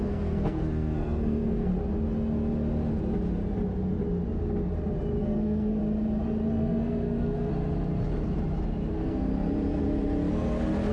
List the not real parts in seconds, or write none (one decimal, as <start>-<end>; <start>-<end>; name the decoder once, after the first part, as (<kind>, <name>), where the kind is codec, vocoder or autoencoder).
0.0-1.7 (codec, SNAC); 5.2-5.8; 6.5-7.5; 8.9-9.3